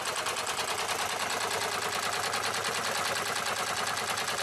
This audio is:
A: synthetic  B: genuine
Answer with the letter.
B